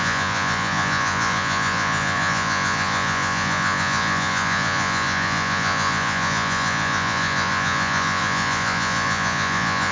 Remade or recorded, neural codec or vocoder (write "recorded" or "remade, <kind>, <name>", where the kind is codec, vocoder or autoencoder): remade, vocoder, Vocos